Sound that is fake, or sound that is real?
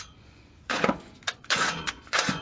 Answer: fake